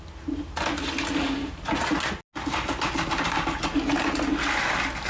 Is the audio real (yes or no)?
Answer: yes